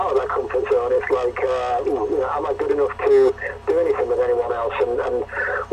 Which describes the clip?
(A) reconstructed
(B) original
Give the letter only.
B